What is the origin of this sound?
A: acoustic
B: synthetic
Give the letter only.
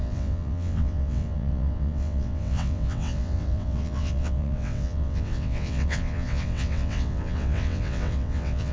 B